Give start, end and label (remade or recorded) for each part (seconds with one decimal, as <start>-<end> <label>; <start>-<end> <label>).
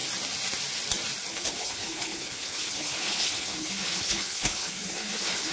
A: 0.0-1.3 recorded; 1.3-5.5 remade